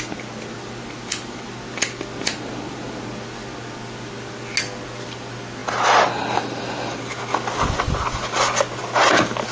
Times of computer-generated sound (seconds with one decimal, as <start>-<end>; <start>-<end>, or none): none